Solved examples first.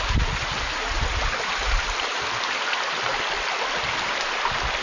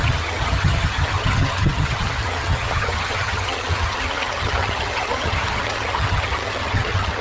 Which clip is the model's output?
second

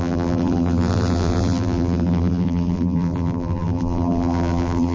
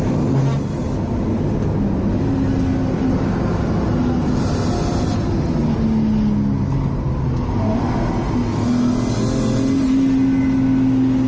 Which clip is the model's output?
first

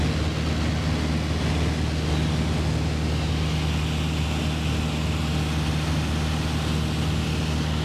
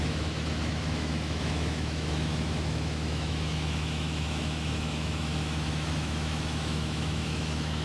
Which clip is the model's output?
second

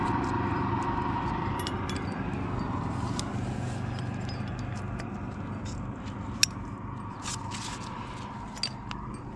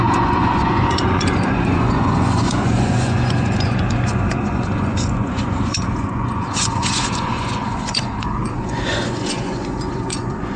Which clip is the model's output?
second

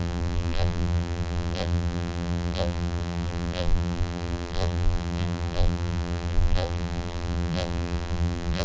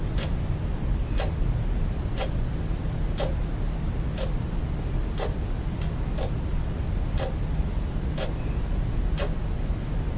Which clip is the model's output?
first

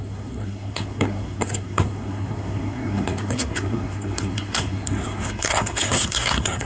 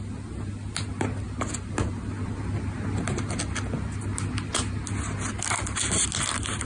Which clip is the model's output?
first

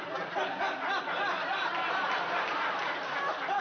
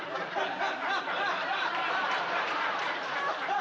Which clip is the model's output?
second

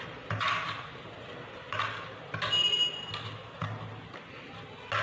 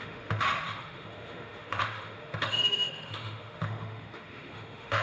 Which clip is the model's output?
second